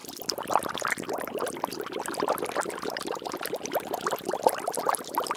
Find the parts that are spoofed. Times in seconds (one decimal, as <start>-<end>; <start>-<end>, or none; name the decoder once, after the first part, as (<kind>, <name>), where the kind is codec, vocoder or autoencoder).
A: none